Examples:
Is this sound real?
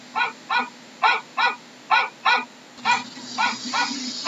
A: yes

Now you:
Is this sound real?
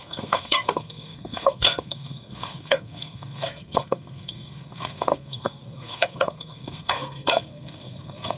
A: no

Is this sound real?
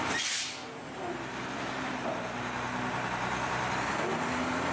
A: yes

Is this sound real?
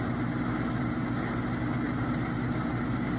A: yes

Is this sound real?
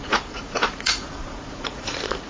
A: no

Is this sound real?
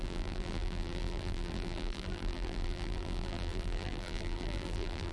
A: no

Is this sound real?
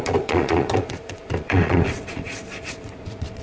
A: no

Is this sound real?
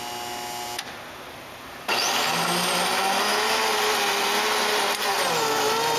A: yes